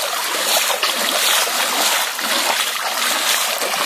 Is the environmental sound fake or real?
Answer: real